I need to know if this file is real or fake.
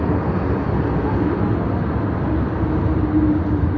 real